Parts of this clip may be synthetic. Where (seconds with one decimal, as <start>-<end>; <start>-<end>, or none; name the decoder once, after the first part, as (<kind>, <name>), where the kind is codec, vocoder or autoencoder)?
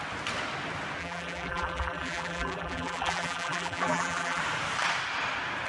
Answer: 1.0-4.4 (vocoder, BigVGAN v2)